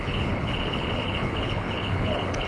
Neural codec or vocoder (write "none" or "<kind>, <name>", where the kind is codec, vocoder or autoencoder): codec, HILCodec